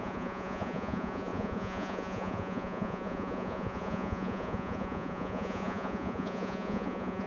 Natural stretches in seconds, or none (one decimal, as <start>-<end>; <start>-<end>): none